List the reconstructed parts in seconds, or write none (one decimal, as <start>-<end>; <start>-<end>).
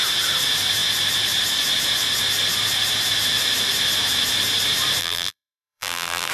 5.0-6.3